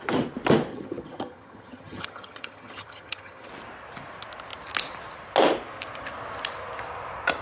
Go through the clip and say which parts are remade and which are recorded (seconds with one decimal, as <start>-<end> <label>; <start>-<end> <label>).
0.0-0.7 recorded; 0.7-3.5 remade; 3.5-7.4 recorded